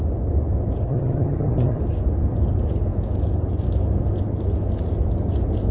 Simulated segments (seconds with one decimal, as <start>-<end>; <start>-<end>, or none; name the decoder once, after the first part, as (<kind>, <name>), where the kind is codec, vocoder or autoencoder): 0.9-1.8 (vocoder, HiFi-GAN)